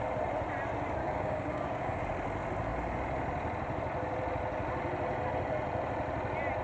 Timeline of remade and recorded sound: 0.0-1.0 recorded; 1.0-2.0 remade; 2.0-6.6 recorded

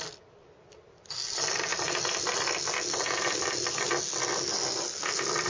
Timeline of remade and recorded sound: 0.0-5.5 recorded

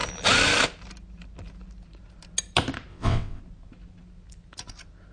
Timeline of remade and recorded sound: 0.0-2.9 recorded; 2.9-3.4 remade; 3.4-5.1 recorded